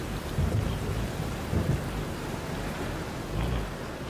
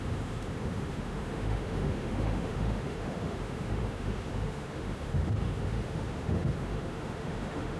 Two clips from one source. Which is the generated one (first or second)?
second